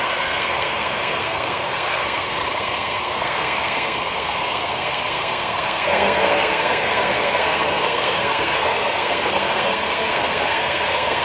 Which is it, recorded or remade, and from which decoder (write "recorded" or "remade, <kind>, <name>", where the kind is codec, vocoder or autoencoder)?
remade, codec, SNAC